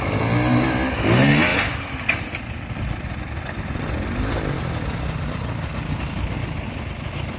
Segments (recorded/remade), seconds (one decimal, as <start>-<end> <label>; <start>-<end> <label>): 0.0-7.4 recorded